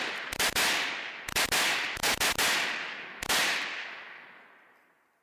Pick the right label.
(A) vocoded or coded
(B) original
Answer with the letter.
B